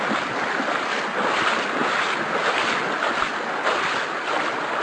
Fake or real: real